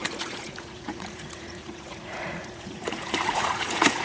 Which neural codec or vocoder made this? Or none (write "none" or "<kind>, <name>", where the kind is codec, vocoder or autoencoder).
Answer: vocoder, Vocos